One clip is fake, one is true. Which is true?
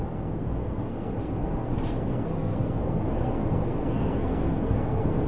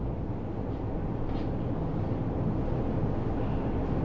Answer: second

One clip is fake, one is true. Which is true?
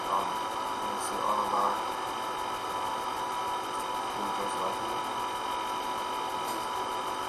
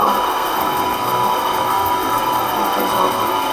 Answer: first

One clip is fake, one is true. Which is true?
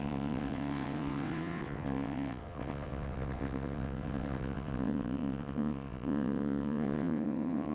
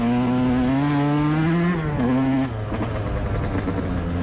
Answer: second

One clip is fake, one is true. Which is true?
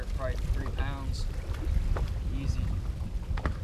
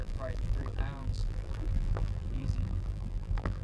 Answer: first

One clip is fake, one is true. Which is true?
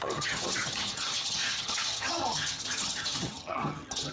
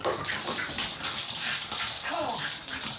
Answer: second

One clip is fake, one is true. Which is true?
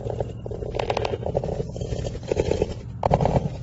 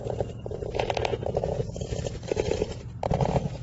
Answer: first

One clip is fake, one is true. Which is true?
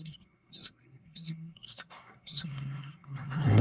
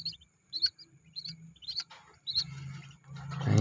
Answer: second